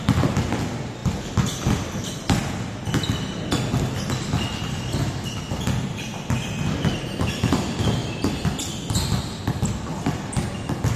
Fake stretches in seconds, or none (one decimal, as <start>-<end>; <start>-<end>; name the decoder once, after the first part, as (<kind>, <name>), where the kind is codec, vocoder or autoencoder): none

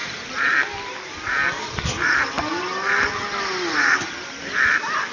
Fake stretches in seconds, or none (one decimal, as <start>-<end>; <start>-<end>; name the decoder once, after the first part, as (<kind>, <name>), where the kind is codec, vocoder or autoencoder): 0.0-2.6 (vocoder, BigVGAN v2)

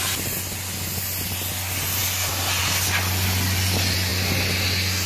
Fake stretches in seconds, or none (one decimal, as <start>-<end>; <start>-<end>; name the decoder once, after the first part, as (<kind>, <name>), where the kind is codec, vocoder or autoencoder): none

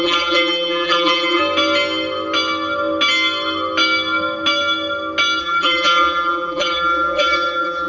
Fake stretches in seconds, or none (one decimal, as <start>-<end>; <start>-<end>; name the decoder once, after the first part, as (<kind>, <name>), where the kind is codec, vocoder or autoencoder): 0.0-1.4 (vocoder, BigVGAN v2); 5.4-7.9

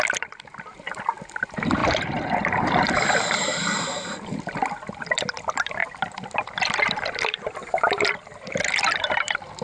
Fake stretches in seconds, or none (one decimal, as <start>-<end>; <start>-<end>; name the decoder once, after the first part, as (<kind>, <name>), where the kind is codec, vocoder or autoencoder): 0.0-5.8 (vocoder, BigVGAN v2); 6.6-9.6

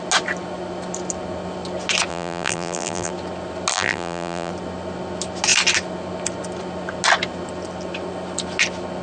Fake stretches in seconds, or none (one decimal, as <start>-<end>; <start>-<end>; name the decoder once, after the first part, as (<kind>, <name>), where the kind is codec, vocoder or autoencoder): 2.1-3.1 (vocoder, BigVGAN v2); 3.7-4.5